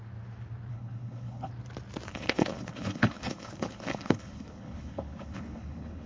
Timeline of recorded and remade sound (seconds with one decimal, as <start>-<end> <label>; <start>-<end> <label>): 0.0-0.7 recorded; 0.7-1.5 remade; 1.5-2.1 recorded; 2.1-6.1 remade